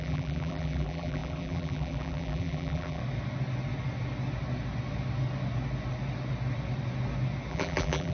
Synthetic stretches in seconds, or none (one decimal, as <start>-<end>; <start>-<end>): 0.0-3.0; 7.5-8.1